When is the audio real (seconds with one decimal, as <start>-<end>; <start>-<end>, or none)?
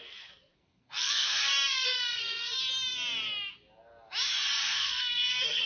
2.6-4.7